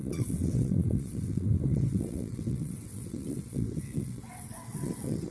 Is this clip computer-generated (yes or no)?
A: yes